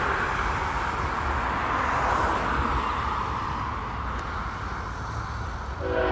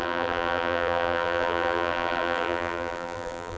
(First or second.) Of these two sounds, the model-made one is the second